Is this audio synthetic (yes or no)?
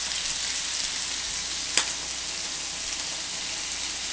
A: no